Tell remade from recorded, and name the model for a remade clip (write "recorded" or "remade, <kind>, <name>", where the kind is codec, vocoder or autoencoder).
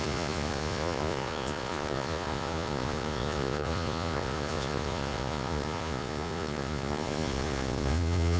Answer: remade, vocoder, Vocos